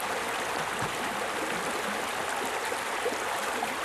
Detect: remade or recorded recorded